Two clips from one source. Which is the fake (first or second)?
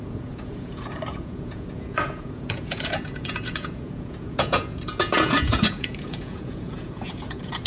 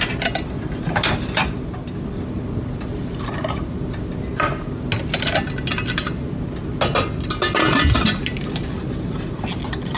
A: first